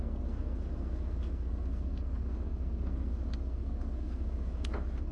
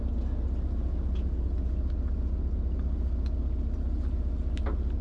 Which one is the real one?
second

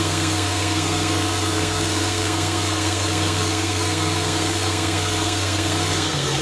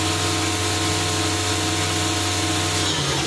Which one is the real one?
second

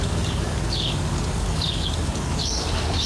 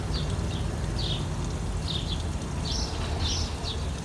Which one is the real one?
second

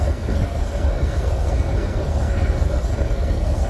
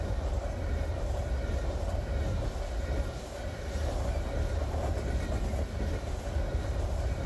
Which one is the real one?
second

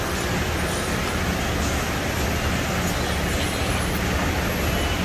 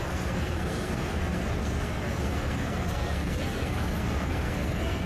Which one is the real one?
first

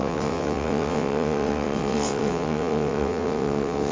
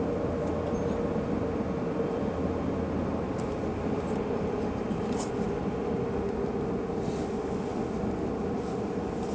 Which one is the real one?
second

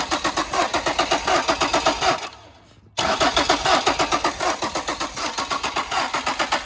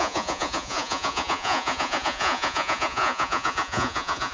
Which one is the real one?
first